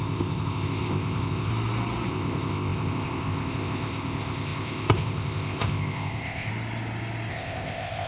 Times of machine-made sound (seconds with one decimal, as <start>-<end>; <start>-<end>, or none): 0.0-1.5; 2.1-6.5; 7.3-8.1